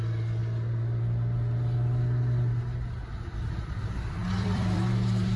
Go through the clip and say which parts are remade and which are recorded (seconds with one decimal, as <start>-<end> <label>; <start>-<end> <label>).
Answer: 0.0-0.4 remade; 0.4-3.6 recorded; 3.6-5.4 remade